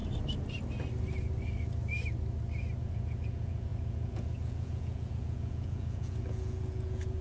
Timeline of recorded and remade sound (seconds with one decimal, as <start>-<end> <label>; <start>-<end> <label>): 0.0-2.8 recorded; 2.8-7.2 remade